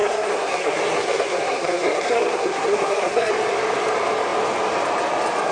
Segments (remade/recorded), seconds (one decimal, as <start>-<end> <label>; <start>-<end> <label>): 0.0-3.3 remade; 3.3-5.5 recorded